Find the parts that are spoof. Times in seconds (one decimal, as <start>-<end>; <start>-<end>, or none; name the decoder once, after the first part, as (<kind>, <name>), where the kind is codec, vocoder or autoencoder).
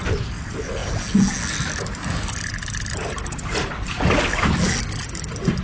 none